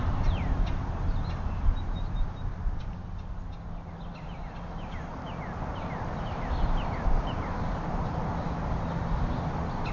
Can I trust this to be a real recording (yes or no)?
yes